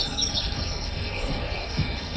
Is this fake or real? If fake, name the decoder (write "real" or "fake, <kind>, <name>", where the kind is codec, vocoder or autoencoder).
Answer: fake, codec, SNAC